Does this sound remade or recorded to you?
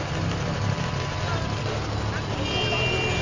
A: recorded